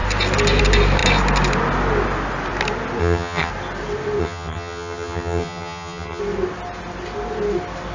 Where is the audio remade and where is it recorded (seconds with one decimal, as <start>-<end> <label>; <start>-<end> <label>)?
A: 0.0-3.0 recorded; 3.0-3.5 remade; 3.5-4.2 recorded; 4.2-6.2 remade; 6.2-7.9 recorded